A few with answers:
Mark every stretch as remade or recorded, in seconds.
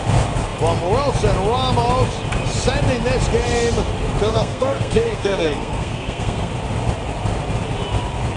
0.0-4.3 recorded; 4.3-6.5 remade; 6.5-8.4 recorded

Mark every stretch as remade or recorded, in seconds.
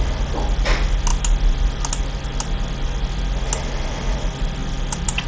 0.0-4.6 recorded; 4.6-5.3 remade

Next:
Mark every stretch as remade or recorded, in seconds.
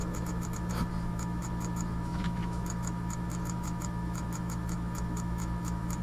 0.0-6.0 remade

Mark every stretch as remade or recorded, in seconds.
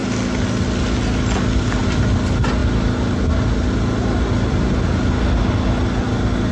0.0-6.5 recorded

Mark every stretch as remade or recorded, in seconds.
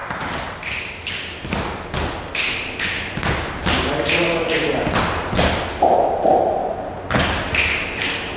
0.0-8.4 recorded